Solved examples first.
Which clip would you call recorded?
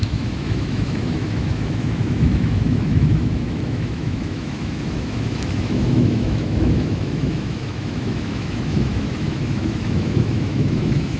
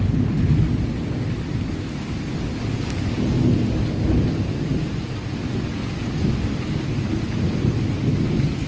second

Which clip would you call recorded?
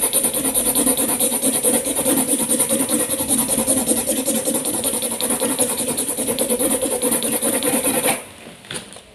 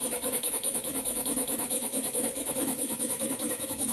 first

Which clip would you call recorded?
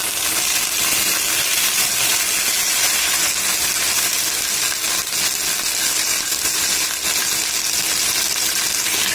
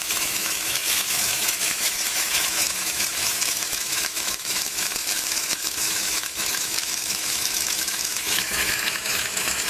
first